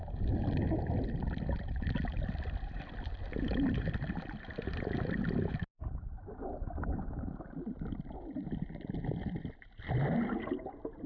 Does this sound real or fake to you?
real